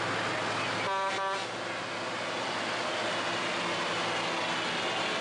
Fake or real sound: real